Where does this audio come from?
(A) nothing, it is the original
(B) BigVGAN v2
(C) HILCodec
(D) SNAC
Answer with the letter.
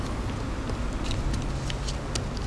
A